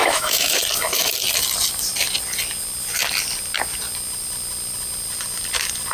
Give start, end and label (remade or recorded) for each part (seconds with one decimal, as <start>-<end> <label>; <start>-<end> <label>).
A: 0.0-0.6 remade; 0.6-5.9 recorded